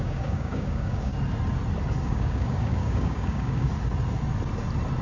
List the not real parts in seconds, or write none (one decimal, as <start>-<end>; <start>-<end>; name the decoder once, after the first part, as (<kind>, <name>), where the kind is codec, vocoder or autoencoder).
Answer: 0.0-1.1 (codec, DAC); 2.0-3.7